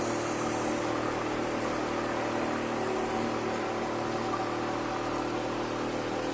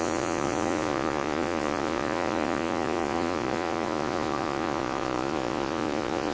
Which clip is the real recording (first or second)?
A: first